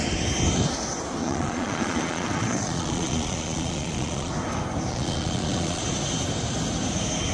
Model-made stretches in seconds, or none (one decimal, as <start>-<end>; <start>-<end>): 1.2-4.3; 4.9-5.8